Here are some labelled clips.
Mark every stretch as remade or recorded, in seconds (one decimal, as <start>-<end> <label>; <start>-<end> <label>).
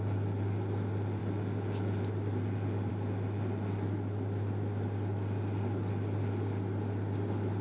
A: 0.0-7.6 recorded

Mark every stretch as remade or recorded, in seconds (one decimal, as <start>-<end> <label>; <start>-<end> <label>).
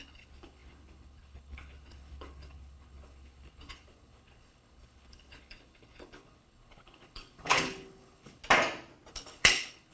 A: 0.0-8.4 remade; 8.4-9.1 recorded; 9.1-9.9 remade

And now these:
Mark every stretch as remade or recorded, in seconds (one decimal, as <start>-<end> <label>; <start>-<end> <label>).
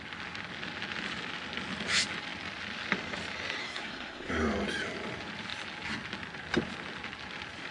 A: 0.0-3.6 recorded; 3.6-4.3 remade; 4.3-7.7 recorded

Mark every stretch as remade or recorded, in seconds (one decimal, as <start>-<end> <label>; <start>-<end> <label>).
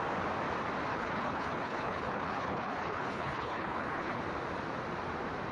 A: 0.0-0.9 recorded; 0.9-4.2 remade; 4.2-5.5 recorded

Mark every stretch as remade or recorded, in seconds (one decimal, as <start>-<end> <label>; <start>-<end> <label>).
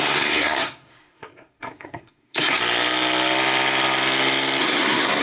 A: 0.0-2.6 remade; 2.6-4.6 recorded; 4.6-5.2 remade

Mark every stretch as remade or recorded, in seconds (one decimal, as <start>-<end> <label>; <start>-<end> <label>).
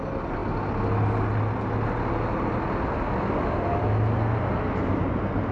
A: 0.0-5.5 recorded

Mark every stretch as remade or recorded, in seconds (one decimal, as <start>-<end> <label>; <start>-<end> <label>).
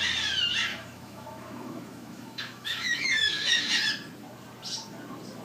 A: 0.0-0.7 recorded; 0.7-3.6 remade; 3.6-5.4 recorded